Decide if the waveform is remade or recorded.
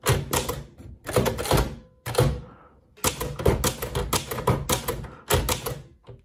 recorded